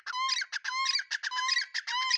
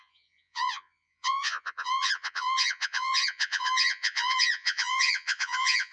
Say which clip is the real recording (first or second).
first